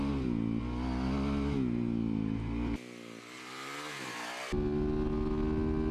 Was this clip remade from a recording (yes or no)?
no